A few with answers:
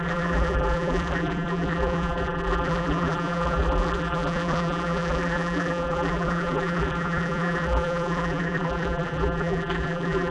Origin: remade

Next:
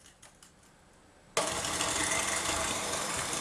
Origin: recorded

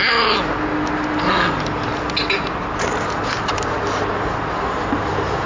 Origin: recorded